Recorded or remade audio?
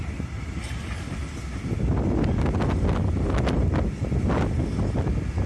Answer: recorded